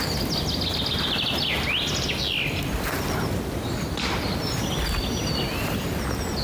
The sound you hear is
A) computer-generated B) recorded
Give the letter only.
B